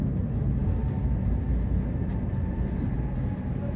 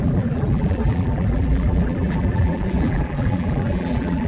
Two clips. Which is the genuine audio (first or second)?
first